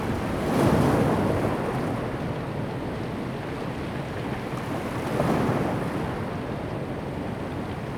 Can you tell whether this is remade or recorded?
recorded